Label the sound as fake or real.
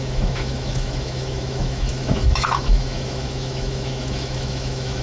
fake